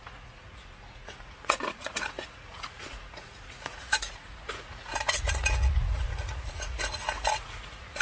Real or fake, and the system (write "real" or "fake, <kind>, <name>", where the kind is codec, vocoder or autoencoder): fake, vocoder, Vocos